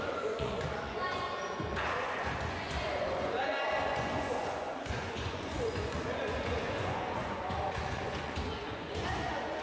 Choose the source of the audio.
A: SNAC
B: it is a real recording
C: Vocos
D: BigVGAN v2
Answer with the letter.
C